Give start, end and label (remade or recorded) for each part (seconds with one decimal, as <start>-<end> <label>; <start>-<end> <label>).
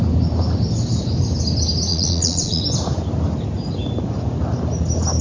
0.0-1.9 recorded; 1.9-2.6 remade; 2.6-5.2 recorded